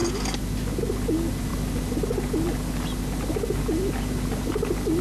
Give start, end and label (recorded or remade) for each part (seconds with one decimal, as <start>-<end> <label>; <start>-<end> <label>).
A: 0.0-5.0 recorded